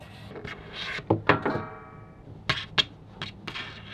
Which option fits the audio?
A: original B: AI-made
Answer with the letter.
A